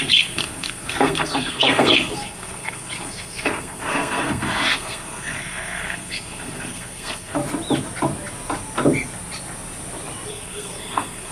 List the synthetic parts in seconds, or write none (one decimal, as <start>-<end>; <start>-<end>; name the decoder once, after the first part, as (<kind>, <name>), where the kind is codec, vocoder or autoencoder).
0.0-7.4 (codec, SNAC); 10.3-11.3